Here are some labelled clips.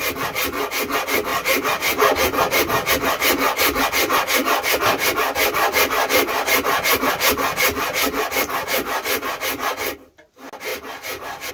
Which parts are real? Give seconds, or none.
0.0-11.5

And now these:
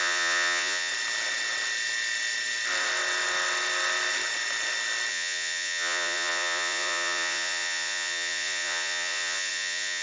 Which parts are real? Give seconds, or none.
0.9-5.1

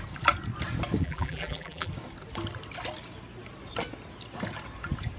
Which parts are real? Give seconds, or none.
0.0-1.0; 1.9-5.2

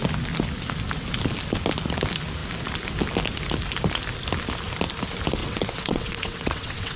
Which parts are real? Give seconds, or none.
0.0-5.4

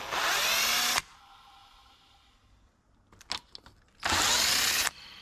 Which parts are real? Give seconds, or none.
0.0-5.2

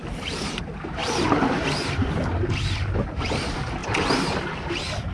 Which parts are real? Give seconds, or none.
0.6-1.0; 2.1-3.8; 4.6-5.1

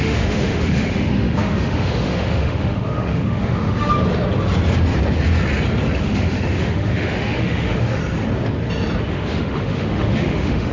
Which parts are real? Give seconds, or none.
3.9-6.0; 8.0-9.1